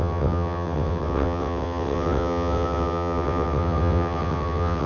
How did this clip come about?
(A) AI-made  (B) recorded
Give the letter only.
A